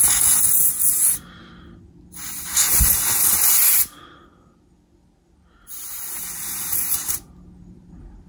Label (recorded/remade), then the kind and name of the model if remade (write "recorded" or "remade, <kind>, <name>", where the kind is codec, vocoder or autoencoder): recorded